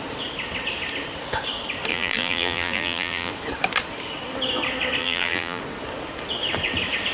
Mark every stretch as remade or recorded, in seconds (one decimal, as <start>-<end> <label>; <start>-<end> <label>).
0.0-1.9 recorded; 1.9-3.3 remade; 3.3-5.0 recorded; 5.0-5.6 remade; 5.6-7.1 recorded